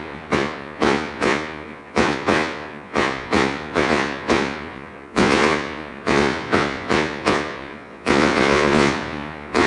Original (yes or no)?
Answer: no